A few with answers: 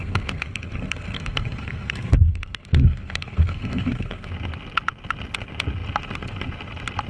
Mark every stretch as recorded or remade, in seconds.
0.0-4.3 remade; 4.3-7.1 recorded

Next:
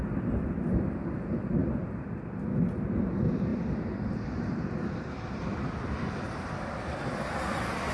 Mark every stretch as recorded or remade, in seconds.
0.0-3.5 recorded; 3.5-7.9 remade

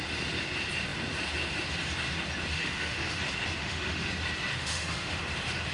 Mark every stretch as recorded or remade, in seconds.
0.0-2.5 recorded; 2.5-3.2 remade; 3.2-3.6 recorded; 3.6-4.1 remade; 4.1-4.5 recorded; 4.5-5.2 remade; 5.2-5.7 recorded

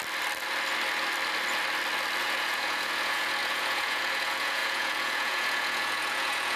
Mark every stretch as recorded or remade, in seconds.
0.0-2.2 recorded; 2.2-6.6 remade

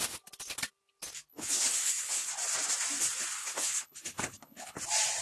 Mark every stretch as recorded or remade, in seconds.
0.0-1.3 recorded; 1.3-2.3 remade; 2.3-3.4 recorded; 3.4-4.8 remade; 4.8-5.2 recorded

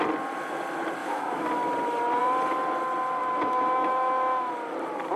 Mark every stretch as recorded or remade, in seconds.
0.0-1.0 recorded; 1.0-1.5 remade; 1.5-3.2 recorded; 3.2-4.5 remade; 4.5-5.2 recorded

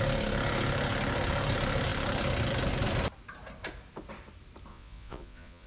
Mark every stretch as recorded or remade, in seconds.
0.0-4.7 recorded; 4.7-5.7 remade

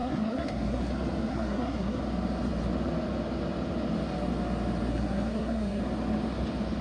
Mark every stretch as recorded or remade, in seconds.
0.0-0.9 remade; 0.9-1.3 recorded; 1.3-2.0 remade; 2.0-4.9 recorded; 4.9-5.8 remade; 5.8-6.8 recorded